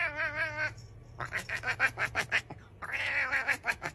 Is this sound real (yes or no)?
yes